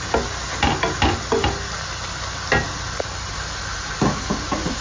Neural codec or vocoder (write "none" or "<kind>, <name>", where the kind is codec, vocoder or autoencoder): none